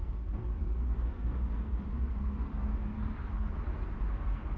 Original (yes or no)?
no